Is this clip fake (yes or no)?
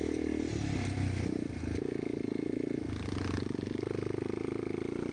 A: no